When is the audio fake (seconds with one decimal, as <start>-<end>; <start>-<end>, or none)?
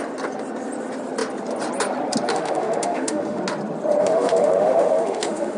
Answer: 2.3-3.4; 4.0-5.6